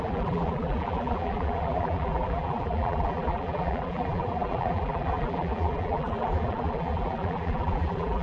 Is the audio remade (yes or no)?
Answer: yes